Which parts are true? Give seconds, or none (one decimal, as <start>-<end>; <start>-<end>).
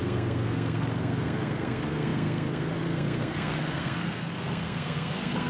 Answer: none